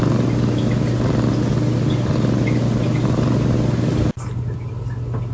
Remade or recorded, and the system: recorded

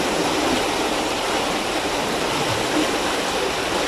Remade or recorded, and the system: recorded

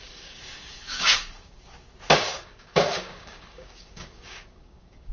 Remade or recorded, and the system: remade, codec, DAC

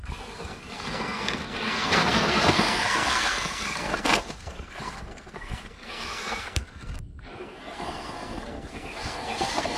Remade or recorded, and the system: remade, codec, SNAC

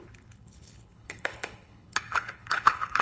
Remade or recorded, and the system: remade, codec, HILCodec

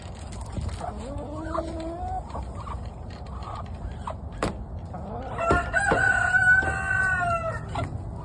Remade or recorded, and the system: recorded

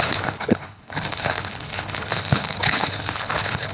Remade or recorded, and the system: remade, codec, HILCodec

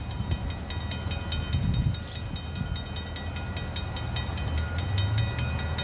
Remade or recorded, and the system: recorded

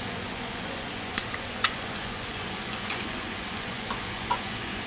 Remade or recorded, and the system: remade, vocoder, Vocos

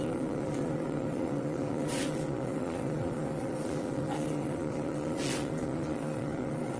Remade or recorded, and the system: remade, vocoder, Vocos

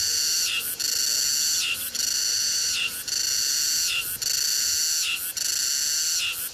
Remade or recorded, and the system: recorded